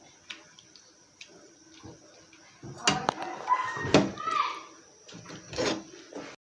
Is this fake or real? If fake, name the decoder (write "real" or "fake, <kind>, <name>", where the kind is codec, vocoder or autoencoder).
real